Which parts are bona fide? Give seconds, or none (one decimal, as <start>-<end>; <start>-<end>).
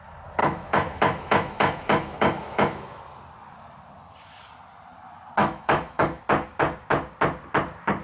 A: 0.0-0.4; 3.0-5.4; 6.2-8.0